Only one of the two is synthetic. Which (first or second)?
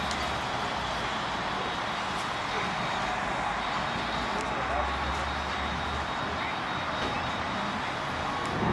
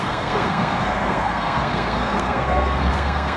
second